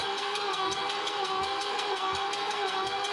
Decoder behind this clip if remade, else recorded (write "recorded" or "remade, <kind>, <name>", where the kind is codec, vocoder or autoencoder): remade, codec, SNAC